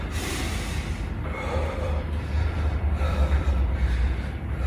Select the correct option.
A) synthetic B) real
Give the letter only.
A